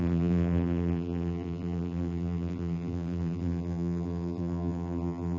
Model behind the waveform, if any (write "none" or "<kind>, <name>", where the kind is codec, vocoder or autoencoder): vocoder, BigVGAN v2